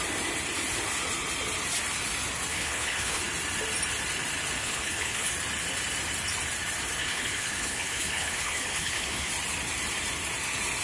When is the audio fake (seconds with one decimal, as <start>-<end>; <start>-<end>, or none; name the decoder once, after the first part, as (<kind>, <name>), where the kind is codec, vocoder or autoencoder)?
2.5-3.2 (codec, HILCodec); 4.6-5.3; 7.0-9.3